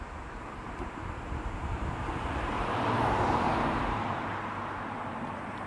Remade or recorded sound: remade